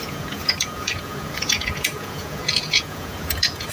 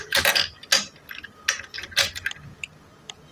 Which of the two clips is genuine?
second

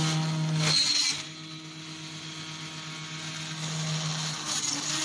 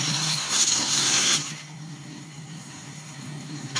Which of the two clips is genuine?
first